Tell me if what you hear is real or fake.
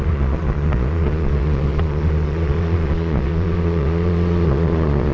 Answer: fake